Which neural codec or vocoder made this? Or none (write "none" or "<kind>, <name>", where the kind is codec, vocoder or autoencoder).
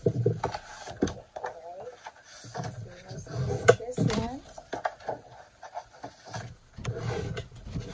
none